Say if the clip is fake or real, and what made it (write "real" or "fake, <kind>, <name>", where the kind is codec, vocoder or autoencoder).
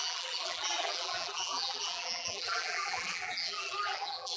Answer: fake, vocoder, BigVGAN v2